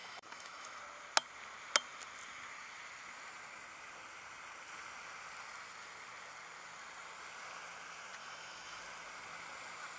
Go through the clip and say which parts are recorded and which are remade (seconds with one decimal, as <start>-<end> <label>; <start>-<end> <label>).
0.0-0.8 remade; 0.8-8.2 recorded; 8.2-8.8 remade; 8.8-10.0 recorded